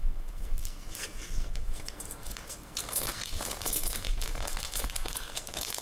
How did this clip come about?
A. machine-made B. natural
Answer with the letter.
A